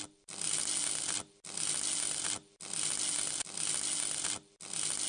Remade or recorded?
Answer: recorded